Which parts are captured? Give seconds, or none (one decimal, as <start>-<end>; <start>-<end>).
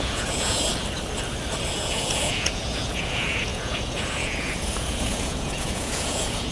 0.7-1.7